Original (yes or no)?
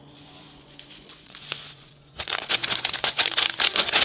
no